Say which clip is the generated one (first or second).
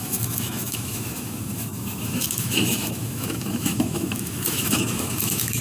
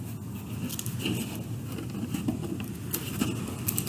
first